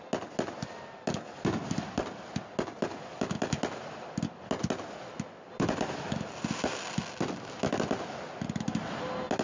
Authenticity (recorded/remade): recorded